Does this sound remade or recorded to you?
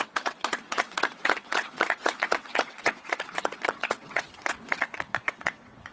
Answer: remade